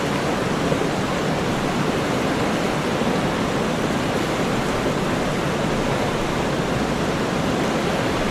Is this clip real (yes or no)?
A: yes